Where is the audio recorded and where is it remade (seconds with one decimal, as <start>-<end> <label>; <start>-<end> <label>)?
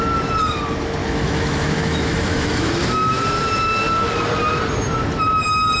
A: 0.0-1.0 recorded; 1.0-2.7 remade; 2.7-5.8 recorded